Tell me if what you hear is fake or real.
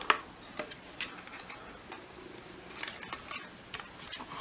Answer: real